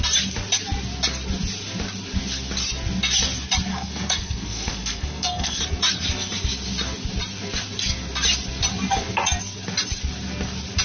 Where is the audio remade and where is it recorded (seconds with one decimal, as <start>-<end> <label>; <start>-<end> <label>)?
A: 0.0-3.7 recorded; 3.7-5.6 remade; 5.6-10.8 recorded